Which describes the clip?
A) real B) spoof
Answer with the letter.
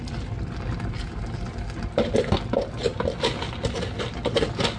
A